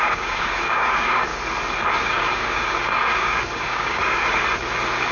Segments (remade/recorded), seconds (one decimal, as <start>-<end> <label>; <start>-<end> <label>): 0.0-1.3 remade; 1.3-2.0 recorded; 2.0-4.2 remade; 4.2-5.1 recorded